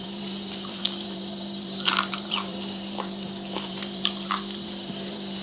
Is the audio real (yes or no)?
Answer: no